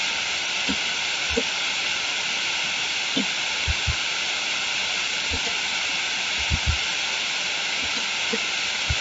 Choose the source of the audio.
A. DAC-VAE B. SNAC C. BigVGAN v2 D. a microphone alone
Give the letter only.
D